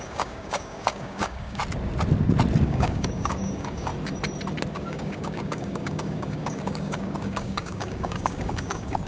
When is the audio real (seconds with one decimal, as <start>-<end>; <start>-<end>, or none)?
1.6-2.6; 3.9-4.7